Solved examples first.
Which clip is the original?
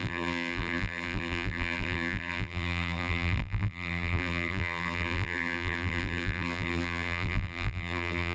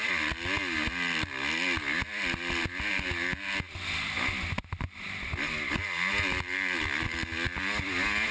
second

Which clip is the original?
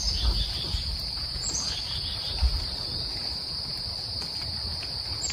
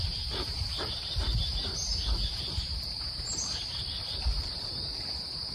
first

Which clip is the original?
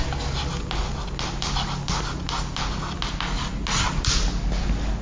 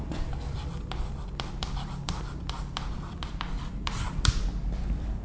first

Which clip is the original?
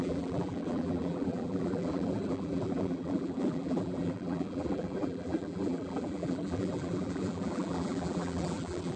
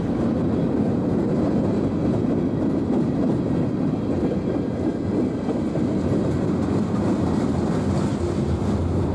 second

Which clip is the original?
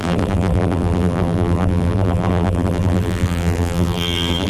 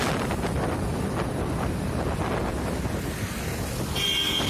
second